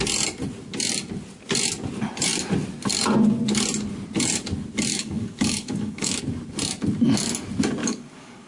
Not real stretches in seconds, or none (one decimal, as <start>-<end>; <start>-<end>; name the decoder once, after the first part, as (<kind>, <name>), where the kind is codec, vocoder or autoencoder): 4.9-6.2 (codec, DAC); 7.8-8.5